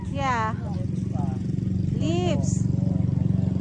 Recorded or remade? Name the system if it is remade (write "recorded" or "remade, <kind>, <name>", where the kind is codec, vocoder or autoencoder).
recorded